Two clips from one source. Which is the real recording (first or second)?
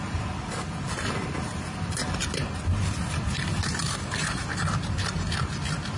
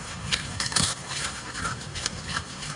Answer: first